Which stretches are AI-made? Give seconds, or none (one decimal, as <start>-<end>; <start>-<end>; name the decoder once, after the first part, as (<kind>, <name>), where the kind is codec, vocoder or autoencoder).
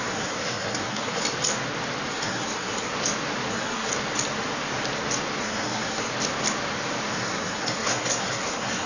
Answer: 0.0-1.2 (codec, SNAC); 2.1-2.9; 3.5-3.9; 5.4-6.1; 7.1-8.9